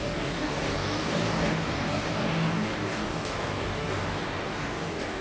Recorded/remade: remade